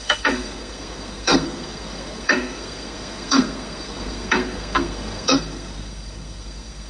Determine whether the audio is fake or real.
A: fake